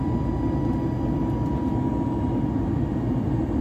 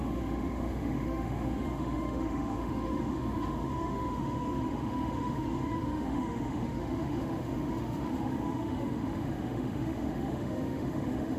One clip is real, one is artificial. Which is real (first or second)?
first